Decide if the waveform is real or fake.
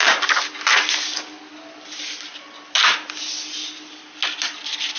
real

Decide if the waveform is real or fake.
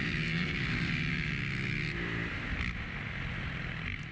real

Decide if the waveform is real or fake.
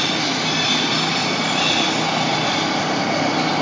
real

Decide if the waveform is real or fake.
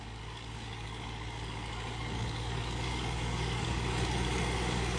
fake